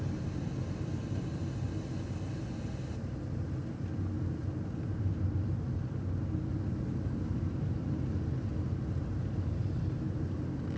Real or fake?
real